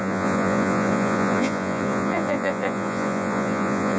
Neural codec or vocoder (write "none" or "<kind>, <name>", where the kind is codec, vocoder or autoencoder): vocoder, Vocos